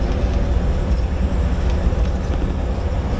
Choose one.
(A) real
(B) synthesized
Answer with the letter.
A